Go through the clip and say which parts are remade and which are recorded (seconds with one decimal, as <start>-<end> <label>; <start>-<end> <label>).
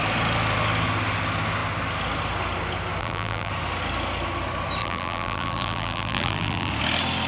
0.0-3.0 recorded; 3.0-3.5 remade; 3.5-4.8 recorded; 4.8-6.7 remade; 6.7-7.3 recorded